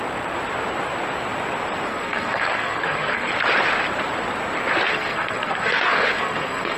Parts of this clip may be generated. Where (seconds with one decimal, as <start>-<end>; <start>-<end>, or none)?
1.9-3.3; 4.9-6.8